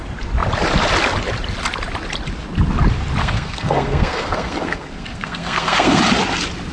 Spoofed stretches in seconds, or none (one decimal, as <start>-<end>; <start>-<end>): 3.2-6.0